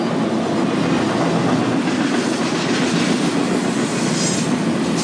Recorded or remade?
recorded